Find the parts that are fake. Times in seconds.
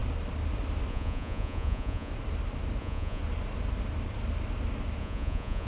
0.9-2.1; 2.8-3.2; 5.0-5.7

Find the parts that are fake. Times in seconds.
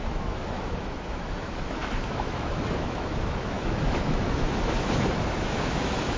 0.0-6.2